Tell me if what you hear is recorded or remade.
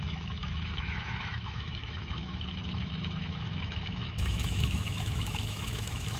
remade